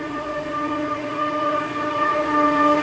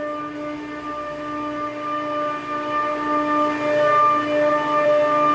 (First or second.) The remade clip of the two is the first